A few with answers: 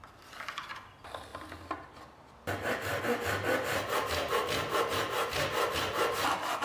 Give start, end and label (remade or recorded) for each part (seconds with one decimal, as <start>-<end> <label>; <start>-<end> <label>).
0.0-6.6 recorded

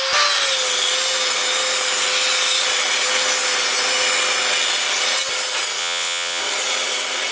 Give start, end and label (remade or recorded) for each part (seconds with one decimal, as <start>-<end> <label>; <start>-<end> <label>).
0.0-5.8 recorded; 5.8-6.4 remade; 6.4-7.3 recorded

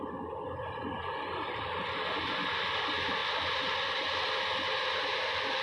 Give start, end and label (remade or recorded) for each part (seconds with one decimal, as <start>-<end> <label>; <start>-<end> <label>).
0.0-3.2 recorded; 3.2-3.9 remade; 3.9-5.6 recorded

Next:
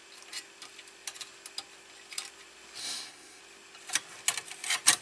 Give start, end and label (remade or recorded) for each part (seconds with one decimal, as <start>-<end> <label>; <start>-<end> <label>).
0.0-2.8 recorded; 2.8-3.4 remade; 3.4-5.0 recorded

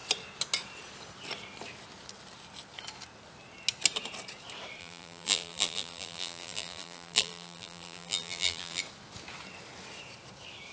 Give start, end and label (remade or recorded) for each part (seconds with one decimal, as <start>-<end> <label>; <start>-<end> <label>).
0.0-4.8 recorded; 4.8-8.8 remade; 8.8-10.7 recorded